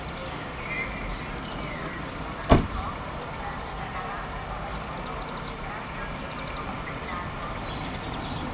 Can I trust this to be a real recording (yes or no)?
yes